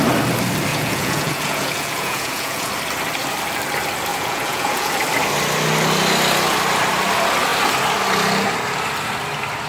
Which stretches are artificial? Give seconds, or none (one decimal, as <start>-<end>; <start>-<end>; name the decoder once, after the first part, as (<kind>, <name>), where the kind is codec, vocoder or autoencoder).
0.7-2.7 (vocoder, Vocos); 4.1-4.9